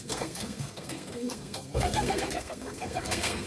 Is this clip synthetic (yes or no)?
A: yes